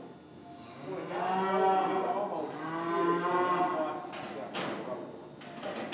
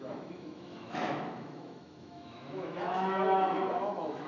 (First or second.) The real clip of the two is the first